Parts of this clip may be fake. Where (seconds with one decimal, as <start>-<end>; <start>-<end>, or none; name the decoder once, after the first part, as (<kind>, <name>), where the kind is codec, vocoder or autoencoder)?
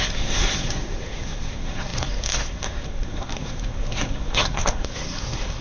0.0-5.6 (codec, SNAC)